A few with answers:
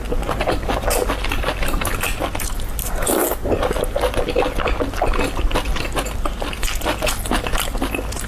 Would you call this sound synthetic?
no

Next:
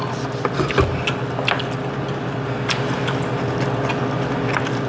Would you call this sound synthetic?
no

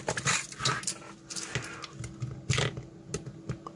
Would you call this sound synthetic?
no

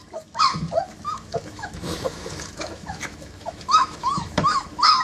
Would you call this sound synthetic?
yes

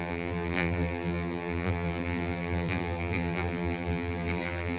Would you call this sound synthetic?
yes